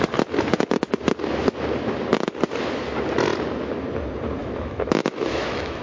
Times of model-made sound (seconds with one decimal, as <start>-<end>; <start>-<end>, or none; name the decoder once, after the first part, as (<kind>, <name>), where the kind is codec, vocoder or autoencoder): 4.4-5.8 (autoencoder, DAC-VAE)